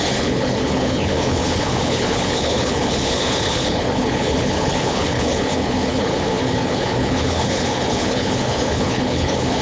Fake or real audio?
fake